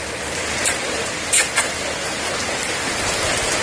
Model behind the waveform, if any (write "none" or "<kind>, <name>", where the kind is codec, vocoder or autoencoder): none